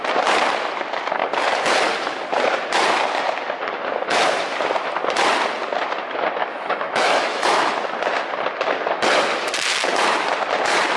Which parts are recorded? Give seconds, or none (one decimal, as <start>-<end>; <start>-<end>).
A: 0.0-6.4; 7.7-11.0